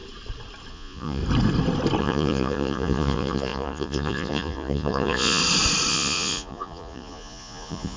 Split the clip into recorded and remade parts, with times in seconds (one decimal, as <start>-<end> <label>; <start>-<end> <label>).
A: 0.0-0.7 recorded; 0.7-1.2 remade; 1.2-2.0 recorded; 2.0-5.4 remade; 5.4-5.9 recorded; 5.9-8.0 remade